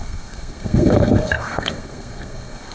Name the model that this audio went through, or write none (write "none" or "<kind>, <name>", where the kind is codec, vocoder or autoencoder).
codec, SNAC